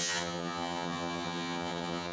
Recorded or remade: remade